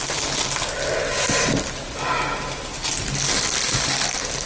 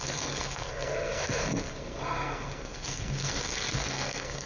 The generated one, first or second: second